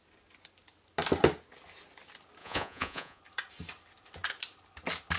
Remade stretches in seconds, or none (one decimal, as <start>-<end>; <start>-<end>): 2.4-3.2